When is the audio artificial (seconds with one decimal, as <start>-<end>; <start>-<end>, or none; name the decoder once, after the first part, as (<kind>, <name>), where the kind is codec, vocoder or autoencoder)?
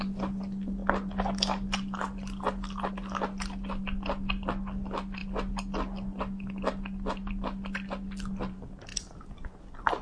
none